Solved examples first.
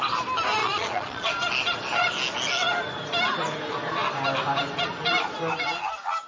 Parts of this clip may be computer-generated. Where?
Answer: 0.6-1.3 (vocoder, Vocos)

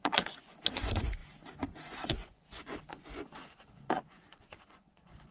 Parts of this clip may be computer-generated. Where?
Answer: 0.0-5.3 (vocoder, Vocos)

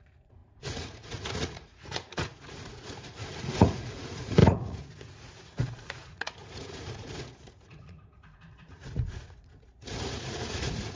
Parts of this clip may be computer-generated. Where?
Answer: 0.0-11.0 (vocoder, Vocos)

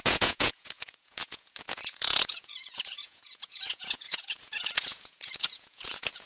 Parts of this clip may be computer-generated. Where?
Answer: 0.0-6.3 (vocoder, Vocos)

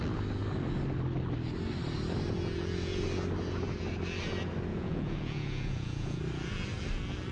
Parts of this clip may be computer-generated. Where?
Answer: 4.7-6.2 (vocoder, Vocos)

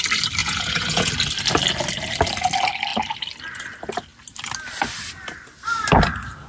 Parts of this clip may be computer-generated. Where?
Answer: 0.4-1.1 (vocoder, Vocos)